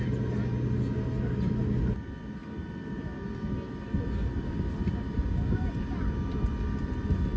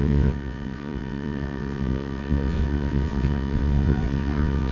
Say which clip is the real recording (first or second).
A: first